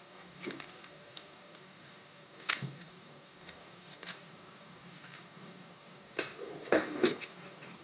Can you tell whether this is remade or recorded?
remade